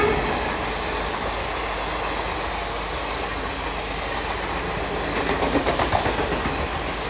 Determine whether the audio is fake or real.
real